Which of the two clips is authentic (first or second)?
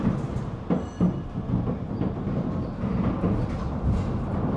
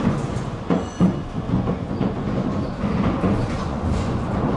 first